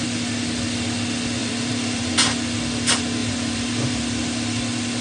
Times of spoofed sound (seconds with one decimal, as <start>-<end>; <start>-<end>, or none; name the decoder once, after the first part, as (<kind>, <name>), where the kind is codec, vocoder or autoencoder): 1.4-2.1 (vocoder, BigVGAN v2); 3.2-4.0